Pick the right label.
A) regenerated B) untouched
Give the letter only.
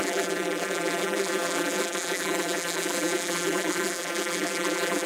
A